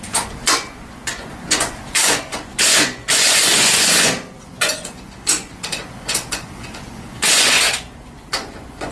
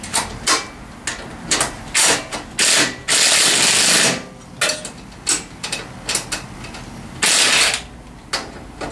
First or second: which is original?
second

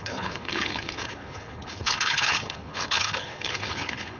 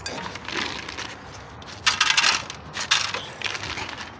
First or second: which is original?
second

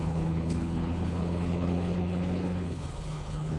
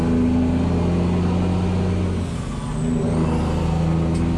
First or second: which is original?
second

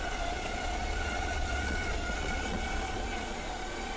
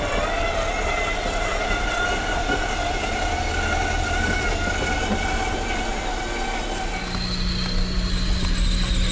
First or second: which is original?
second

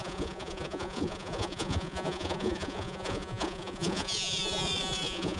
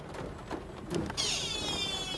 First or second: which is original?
second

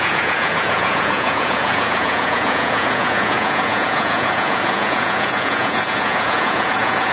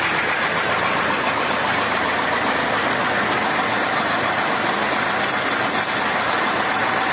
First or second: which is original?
second